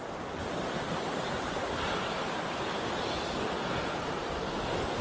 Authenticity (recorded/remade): recorded